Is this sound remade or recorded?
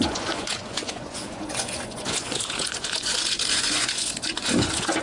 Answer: remade